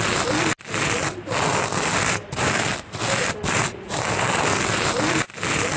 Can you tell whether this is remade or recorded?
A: recorded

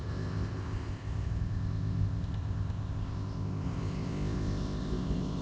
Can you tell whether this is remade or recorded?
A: remade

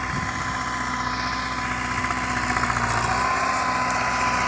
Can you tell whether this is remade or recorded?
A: recorded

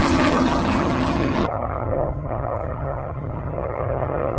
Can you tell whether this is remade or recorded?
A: remade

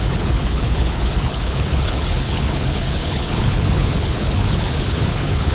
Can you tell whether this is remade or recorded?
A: remade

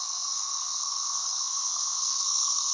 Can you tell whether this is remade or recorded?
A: remade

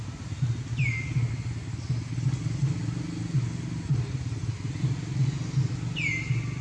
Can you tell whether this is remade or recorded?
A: recorded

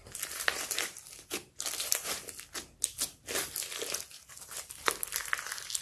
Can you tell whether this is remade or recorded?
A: recorded